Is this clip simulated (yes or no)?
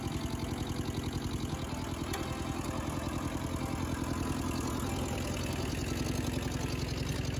no